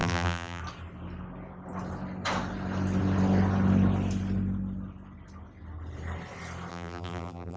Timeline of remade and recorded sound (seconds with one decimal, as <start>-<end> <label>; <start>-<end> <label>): 0.0-0.6 remade; 0.6-6.7 recorded; 6.7-7.6 remade